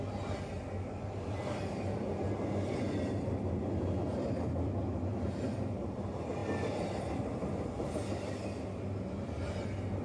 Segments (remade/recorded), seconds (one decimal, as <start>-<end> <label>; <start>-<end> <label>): 0.0-10.0 recorded